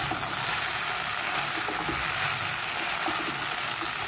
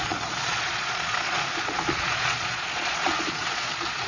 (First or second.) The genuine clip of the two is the first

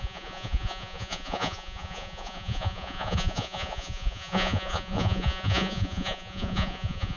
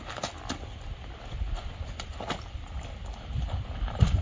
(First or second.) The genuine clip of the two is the second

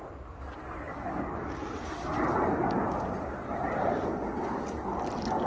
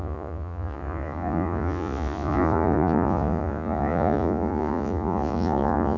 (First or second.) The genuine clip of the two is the first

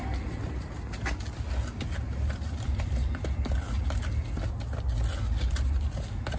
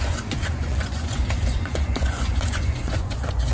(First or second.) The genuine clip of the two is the first